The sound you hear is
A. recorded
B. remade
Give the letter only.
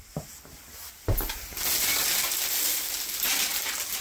A